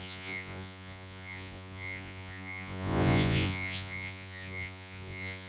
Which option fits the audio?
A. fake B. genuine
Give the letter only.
A